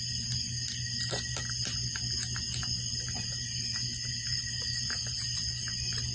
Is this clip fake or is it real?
real